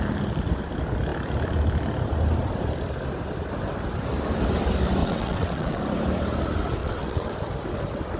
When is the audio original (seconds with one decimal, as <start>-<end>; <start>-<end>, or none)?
0.0-5.0; 5.8-6.8; 7.3-8.2